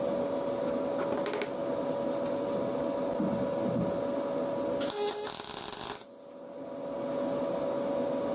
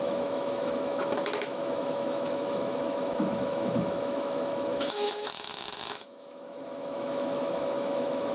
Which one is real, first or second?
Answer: first